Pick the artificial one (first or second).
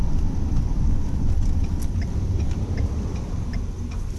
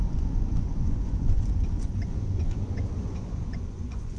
second